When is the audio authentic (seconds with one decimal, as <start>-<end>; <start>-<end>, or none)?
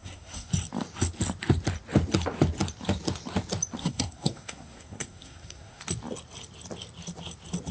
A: 0.5-3.8; 5.8-7.7